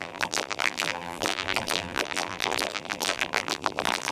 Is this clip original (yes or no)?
no